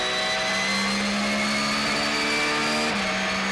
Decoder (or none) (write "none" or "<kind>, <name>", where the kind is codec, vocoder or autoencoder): none